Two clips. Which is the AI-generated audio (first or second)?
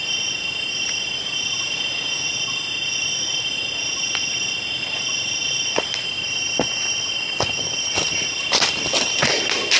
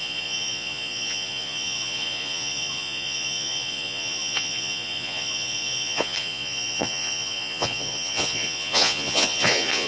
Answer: second